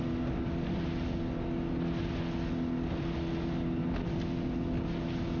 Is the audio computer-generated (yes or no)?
no